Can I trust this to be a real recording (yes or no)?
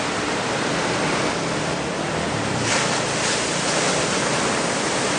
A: yes